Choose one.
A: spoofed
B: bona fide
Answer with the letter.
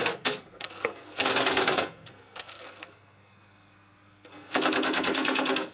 A